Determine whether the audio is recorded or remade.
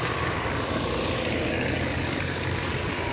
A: remade